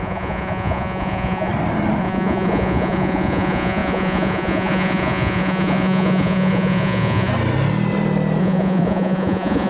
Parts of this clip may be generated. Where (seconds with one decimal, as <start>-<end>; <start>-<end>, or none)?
0.0-1.5; 2.0-7.3; 8.4-9.7